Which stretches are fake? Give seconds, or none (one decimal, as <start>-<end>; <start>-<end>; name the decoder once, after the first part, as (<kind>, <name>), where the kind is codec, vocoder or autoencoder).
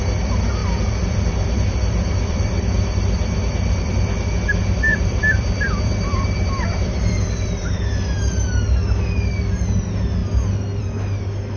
0.6-3.9 (vocoder, BigVGAN v2); 4.9-7.8